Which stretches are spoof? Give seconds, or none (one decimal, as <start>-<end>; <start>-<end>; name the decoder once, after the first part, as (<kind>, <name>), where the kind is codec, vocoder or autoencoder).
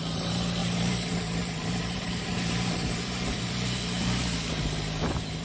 0.0-5.4 (vocoder, BigVGAN v2)